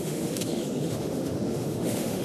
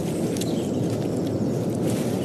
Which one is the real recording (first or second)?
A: second